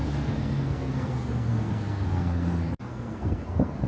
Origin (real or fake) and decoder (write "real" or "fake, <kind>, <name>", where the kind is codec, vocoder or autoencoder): fake, codec, SNAC